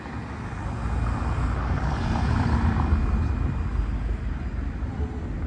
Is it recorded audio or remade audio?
recorded